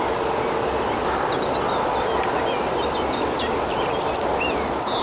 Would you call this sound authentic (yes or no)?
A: yes